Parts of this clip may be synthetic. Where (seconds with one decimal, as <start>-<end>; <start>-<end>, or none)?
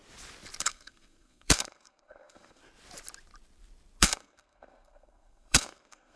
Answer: 0.6-2.6; 4.0-6.2